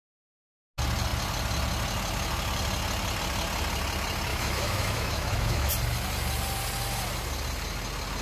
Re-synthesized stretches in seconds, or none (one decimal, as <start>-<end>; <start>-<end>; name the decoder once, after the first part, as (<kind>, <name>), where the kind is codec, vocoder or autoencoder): 4.3-5.7 (autoencoder, DAC-VAE)